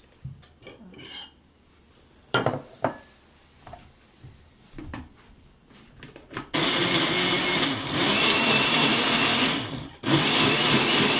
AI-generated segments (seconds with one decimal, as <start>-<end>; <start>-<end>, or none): 0.0-6.8; 7.6-11.2

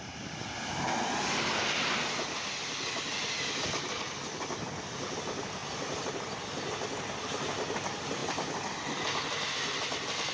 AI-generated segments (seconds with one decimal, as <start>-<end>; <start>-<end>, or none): none

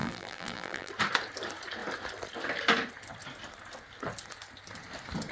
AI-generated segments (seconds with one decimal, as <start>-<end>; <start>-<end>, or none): 0.0-0.9